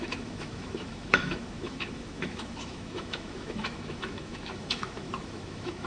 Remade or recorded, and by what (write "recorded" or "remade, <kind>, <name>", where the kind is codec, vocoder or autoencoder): remade, autoencoder, DAC-VAE